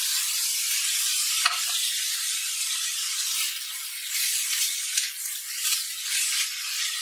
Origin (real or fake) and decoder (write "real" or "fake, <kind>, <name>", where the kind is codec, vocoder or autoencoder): fake, vocoder, BigVGAN v2